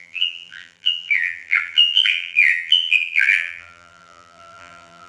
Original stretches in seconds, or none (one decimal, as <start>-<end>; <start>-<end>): none